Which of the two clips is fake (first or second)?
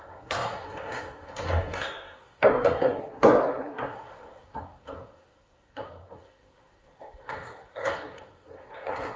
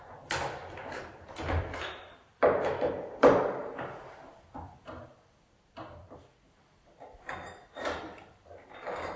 first